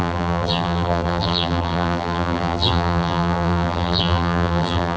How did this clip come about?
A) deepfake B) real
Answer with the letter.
A